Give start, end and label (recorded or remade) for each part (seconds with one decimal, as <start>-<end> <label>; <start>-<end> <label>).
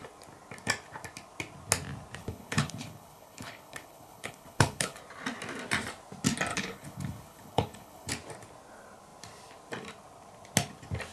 0.0-2.2 recorded; 2.2-5.0 remade; 5.0-6.5 recorded; 6.5-8.1 remade; 8.1-11.1 recorded